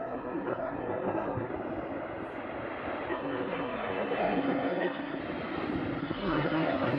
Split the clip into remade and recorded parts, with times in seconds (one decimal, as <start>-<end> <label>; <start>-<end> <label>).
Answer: 0.0-1.5 remade; 1.5-3.1 recorded; 3.1-5.2 remade; 5.2-6.0 recorded; 6.0-7.0 remade